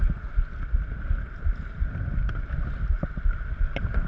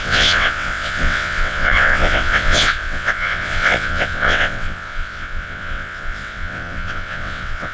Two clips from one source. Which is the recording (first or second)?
first